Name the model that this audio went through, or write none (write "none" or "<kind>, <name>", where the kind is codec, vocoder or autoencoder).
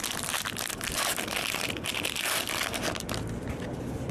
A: none